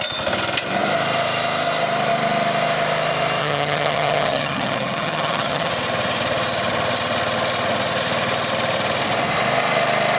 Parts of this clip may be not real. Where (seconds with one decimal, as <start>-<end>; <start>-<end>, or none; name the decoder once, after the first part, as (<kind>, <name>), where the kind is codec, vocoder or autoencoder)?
3.4-5.7 (vocoder, HiFi-GAN)